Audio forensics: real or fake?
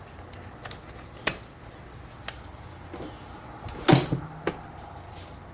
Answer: real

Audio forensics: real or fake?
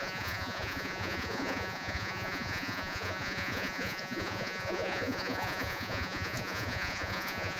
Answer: fake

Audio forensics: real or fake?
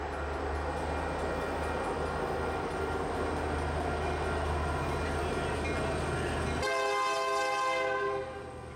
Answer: real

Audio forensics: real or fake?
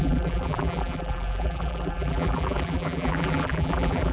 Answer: fake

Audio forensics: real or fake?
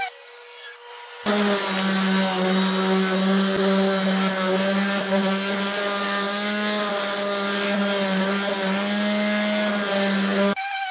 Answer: real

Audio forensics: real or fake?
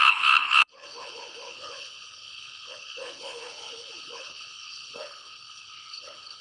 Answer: fake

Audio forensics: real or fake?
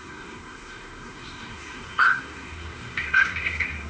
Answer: fake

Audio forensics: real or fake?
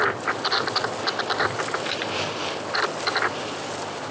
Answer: fake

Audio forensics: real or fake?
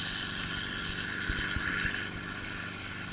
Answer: real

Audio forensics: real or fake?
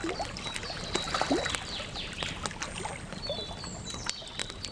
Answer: real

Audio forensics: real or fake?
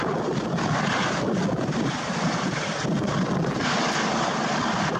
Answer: fake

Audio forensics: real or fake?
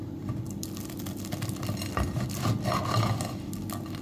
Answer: real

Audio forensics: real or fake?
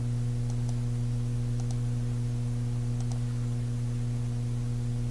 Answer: real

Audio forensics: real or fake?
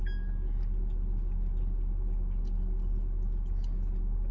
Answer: real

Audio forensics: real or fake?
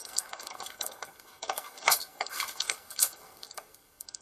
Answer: fake